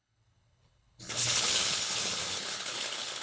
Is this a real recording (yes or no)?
no